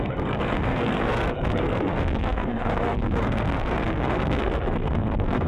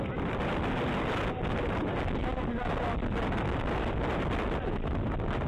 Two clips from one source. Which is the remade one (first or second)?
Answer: first